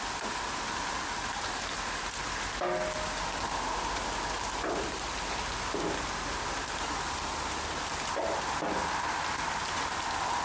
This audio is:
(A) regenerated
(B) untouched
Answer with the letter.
B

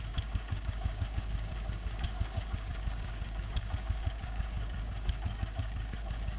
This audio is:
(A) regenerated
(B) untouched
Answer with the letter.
A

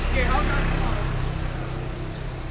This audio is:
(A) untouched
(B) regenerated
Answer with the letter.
A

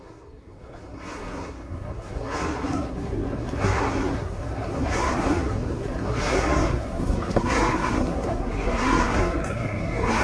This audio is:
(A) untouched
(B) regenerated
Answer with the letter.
B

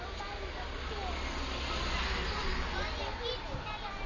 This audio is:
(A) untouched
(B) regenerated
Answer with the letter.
A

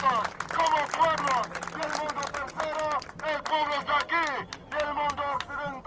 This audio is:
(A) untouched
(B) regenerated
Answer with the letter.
A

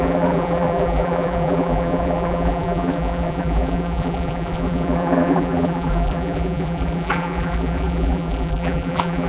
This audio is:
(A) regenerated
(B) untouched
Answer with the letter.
A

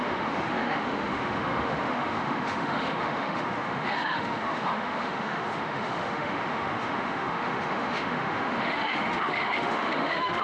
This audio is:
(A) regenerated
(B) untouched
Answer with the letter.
A